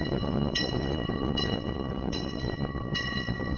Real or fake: fake